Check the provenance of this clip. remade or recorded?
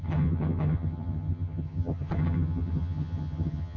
remade